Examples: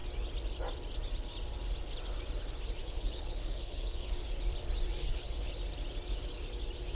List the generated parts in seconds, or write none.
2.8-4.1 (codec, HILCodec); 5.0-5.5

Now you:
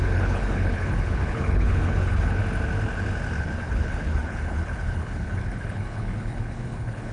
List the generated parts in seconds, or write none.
0.0-2.4 (codec, HILCodec); 3.4-7.1